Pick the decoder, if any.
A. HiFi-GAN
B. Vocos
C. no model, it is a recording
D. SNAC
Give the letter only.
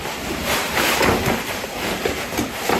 C